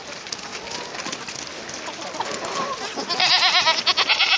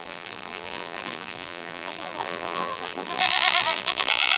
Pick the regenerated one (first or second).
second